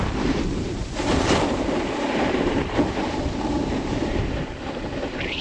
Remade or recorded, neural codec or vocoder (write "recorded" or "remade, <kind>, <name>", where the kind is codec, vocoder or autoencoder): remade, vocoder, BigVGAN v2